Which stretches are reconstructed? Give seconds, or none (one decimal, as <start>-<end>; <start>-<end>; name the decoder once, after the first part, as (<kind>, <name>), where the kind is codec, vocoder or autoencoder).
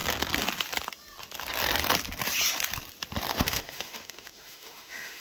3.3-5.2 (autoencoder, DAC-VAE)